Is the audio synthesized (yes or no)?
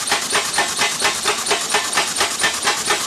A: no